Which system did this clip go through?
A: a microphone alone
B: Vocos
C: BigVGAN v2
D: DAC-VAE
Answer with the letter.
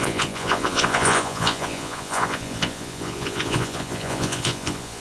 B